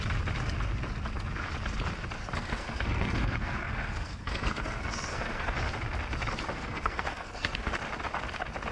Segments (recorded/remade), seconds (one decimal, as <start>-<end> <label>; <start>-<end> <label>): 0.0-2.2 recorded; 2.2-5.6 remade; 5.6-6.5 recorded; 6.5-7.7 remade; 7.7-8.7 recorded